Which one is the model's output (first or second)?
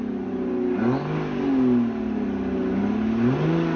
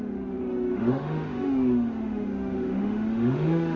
second